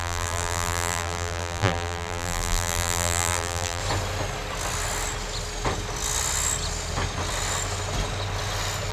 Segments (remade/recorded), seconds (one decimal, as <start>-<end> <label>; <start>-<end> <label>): 0.0-3.8 remade; 3.8-8.9 recorded